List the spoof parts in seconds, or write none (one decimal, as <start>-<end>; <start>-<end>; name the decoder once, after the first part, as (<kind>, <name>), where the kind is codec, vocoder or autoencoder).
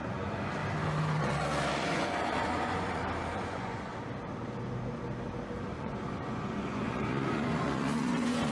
0.0-0.6 (vocoder, Vocos); 1.2-3.0; 3.5-3.9; 5.7-8.5